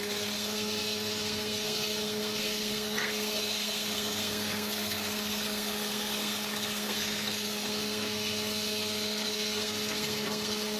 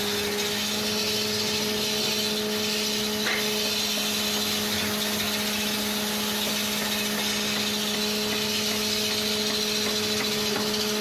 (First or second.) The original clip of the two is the second